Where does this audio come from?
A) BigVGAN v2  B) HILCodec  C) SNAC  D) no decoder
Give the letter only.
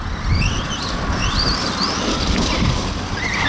A